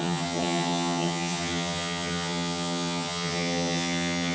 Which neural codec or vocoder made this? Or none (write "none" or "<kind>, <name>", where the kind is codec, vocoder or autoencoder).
vocoder, HiFi-GAN